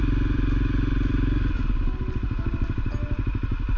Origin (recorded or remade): recorded